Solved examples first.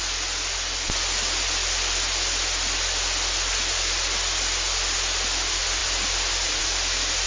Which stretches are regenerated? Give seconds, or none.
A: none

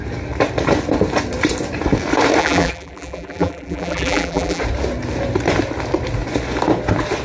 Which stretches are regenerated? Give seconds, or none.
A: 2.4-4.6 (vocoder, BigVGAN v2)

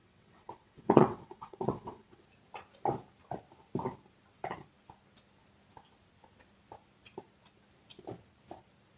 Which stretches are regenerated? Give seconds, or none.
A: 0.0-2.2 (vocoder, WaveNeXt)

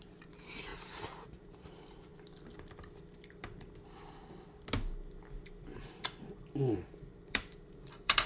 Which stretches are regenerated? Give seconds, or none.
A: 0.0-2.1 (vocoder, BigVGAN v2); 7.0-8.3